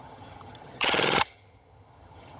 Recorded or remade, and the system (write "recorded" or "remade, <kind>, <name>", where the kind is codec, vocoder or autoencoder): remade, vocoder, HiFi-GAN